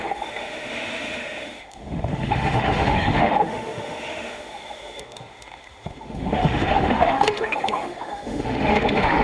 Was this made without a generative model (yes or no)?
no